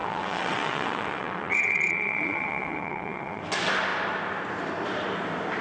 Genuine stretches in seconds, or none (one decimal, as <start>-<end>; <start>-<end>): 3.4-5.6